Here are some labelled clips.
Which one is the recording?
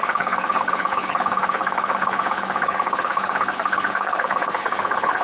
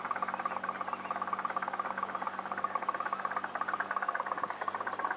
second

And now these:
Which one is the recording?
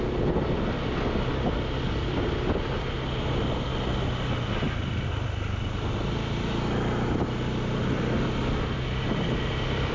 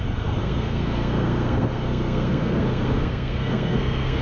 first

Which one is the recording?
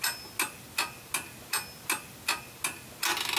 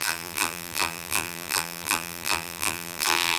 first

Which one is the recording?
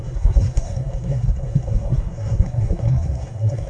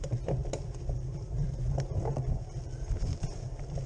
second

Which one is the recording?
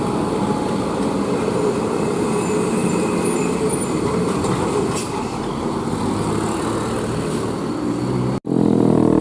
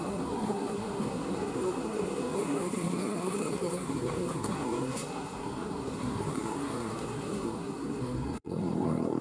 first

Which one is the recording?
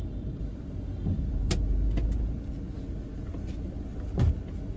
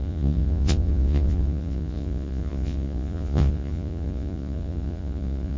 first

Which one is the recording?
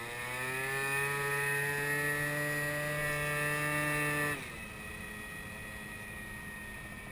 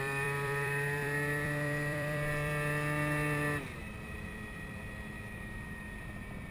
first